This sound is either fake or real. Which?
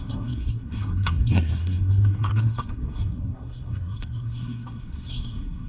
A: fake